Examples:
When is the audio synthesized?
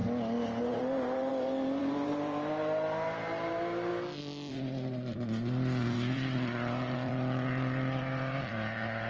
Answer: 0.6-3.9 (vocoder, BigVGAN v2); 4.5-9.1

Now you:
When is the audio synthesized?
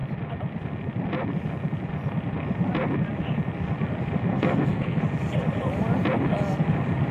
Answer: 4.3-5.0 (codec, SNAC)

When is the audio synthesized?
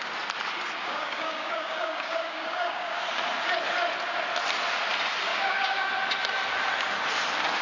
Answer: 0.8-3.0 (codec, DAC); 5.3-5.9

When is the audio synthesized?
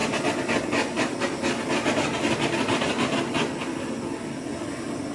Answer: none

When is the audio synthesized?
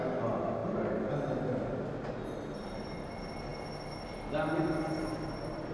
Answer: none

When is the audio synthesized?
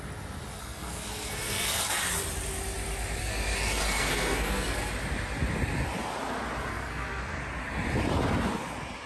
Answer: 0.6-2.0 (codec, SNAC); 3.2-4.9; 6.7-7.4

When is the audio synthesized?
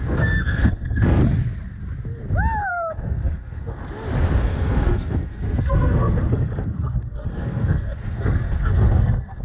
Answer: 0.0-1.2 (codec, SNAC); 2.7-3.8; 4.4-9.4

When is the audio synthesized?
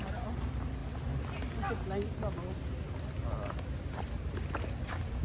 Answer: none